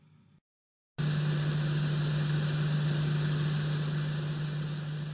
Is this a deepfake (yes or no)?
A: no